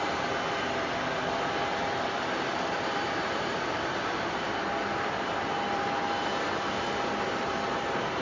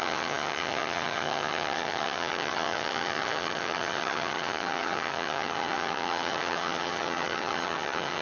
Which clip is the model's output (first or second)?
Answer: second